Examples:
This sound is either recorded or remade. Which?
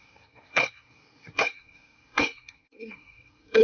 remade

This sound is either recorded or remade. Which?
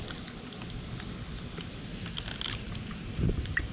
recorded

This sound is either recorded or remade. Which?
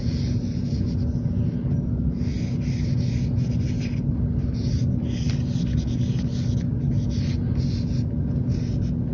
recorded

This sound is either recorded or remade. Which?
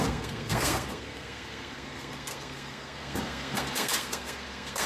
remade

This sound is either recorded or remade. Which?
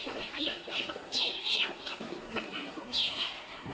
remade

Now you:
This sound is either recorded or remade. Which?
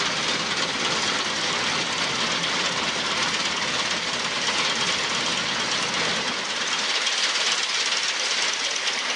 recorded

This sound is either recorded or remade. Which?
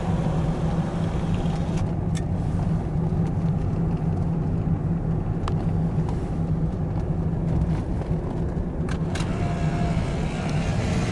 recorded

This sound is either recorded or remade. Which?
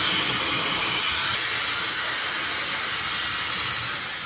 recorded